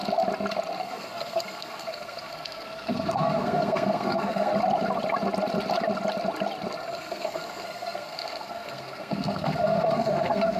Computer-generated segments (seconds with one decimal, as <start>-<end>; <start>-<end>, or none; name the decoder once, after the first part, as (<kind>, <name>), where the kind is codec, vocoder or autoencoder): 0.8-4.5 (codec, SNAC); 7.0-10.6